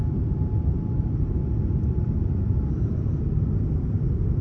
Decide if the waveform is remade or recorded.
recorded